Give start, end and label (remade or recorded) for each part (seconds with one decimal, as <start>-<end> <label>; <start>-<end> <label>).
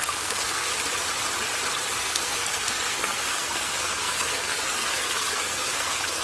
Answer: 0.0-0.7 remade; 0.7-2.0 recorded; 2.0-6.2 remade